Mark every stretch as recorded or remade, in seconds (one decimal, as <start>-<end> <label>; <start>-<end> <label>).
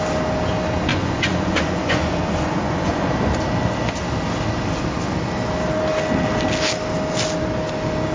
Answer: 0.0-0.9 recorded; 0.9-3.1 remade; 3.1-8.1 recorded